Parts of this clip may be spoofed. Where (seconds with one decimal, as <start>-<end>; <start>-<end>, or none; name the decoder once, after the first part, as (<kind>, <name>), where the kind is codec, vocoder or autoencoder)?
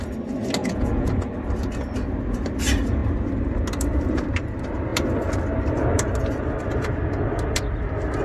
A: 0.6-1.3 (vocoder, Vocos)